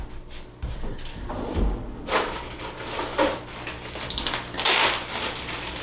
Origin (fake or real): real